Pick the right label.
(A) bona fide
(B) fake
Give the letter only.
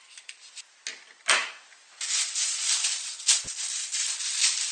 A